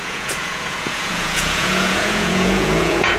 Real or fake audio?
fake